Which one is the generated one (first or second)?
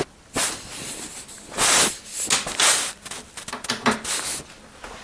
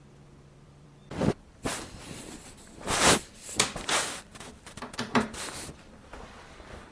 second